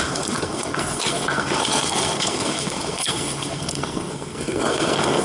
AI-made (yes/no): yes